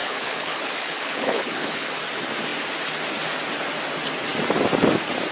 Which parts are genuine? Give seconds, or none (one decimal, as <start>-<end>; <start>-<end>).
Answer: 1.9-5.3